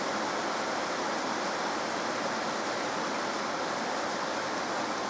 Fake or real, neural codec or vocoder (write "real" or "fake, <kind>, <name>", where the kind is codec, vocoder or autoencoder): real